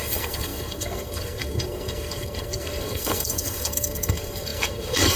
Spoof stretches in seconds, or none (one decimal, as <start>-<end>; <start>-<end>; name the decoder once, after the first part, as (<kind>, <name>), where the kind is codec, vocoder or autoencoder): 0.0-5.2 (codec, SNAC)